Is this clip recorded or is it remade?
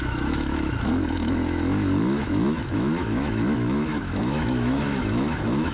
remade